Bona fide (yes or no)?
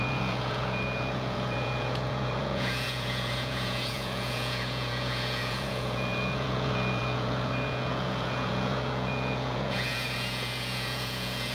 no